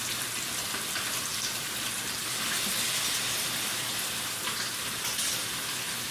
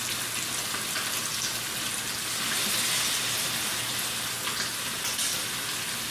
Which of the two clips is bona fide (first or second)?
second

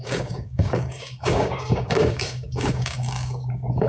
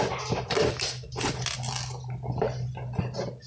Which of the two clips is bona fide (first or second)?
second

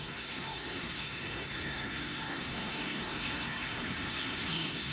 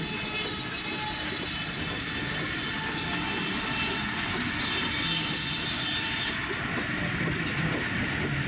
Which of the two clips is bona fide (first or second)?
second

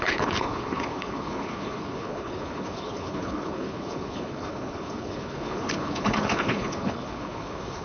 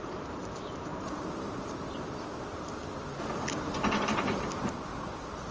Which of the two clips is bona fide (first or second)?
second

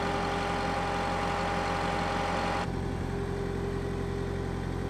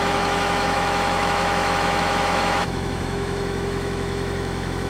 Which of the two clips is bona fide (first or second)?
first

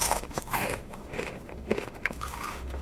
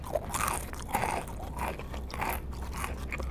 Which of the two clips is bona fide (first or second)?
second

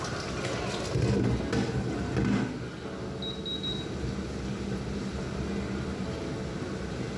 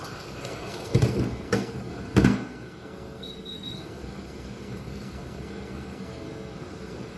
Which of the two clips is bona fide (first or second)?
first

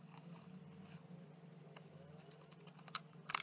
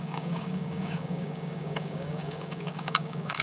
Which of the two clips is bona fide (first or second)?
first